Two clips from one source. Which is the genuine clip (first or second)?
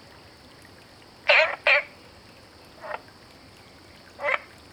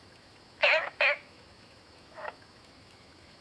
first